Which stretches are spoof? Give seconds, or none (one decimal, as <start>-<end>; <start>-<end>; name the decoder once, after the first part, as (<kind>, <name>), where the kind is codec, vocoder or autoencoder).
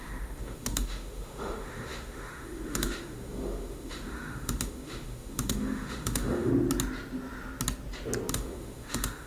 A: 0.0-6.5 (autoencoder, DAC-VAE); 8.3-9.3